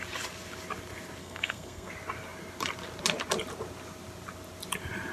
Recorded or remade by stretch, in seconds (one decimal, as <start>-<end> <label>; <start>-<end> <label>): 0.0-1.2 recorded; 1.2-1.9 remade; 1.9-5.1 recorded